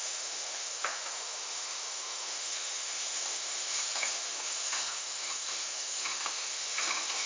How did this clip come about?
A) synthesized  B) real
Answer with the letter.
A